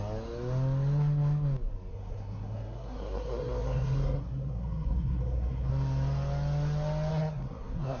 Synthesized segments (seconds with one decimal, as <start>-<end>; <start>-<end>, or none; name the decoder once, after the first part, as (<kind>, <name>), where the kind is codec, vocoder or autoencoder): 1.9-5.7 (codec, SNAC); 7.1-8.0